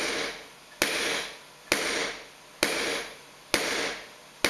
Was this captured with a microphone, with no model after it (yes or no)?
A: yes